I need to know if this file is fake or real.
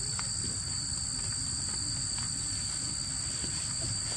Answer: real